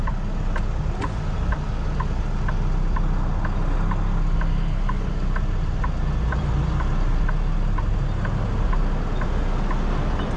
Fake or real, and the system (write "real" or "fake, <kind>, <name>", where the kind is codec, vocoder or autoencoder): real